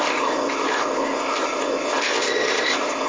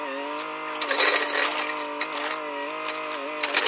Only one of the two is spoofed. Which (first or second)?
first